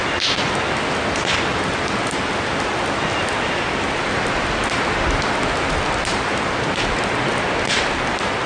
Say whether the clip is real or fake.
real